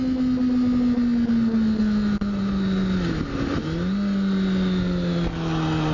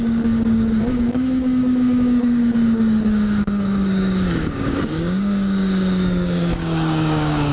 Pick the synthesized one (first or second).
second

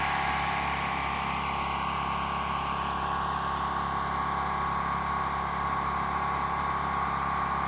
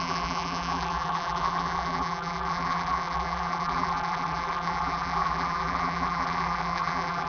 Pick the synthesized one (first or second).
second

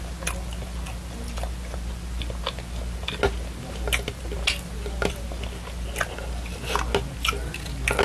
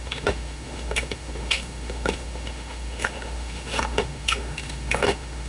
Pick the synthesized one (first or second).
second